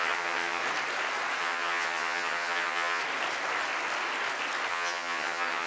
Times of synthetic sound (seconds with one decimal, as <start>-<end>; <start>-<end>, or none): 0.0-0.6; 1.4-3.0; 4.7-5.7